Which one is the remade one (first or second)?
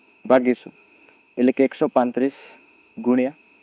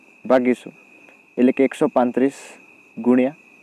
first